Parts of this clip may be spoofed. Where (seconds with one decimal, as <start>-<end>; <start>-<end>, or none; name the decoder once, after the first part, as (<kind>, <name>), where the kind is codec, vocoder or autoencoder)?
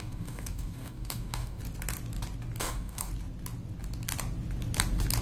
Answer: 0.0-1.6 (codec, DAC); 2.6-3.1